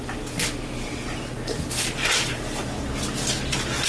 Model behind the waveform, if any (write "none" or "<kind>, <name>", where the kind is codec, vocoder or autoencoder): none